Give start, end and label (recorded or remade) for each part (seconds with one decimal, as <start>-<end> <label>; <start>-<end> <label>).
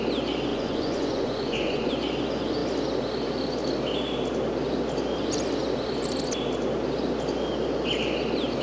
0.0-0.5 recorded; 0.5-1.9 remade; 1.9-8.6 recorded